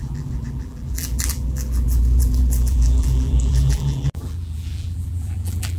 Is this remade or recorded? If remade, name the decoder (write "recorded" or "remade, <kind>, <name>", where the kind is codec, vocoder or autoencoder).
remade, vocoder, BigVGAN v2